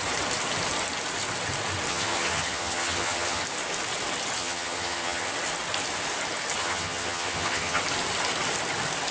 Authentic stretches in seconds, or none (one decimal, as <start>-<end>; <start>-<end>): 0.0-1.9; 3.4-4.4; 5.3-6.6; 7.8-9.1